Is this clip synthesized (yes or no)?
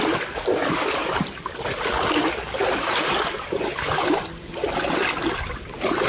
no